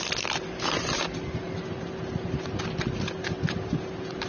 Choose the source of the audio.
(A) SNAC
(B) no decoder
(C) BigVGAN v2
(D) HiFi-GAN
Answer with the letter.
B